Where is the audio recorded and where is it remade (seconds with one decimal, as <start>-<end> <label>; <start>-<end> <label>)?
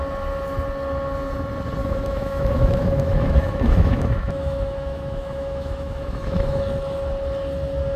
0.0-1.8 recorded; 1.8-6.6 remade; 6.6-8.0 recorded